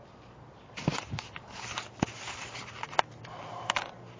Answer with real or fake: real